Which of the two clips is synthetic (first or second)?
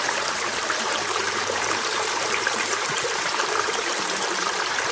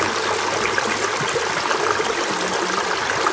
first